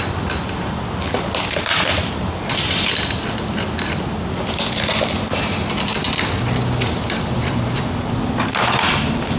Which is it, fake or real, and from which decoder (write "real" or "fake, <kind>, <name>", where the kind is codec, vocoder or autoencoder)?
real